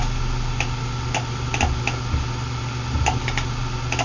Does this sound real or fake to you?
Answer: real